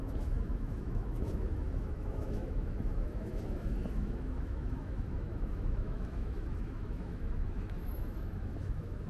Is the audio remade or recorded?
remade